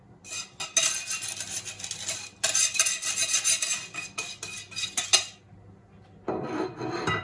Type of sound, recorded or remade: recorded